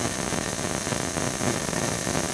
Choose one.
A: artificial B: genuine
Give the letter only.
B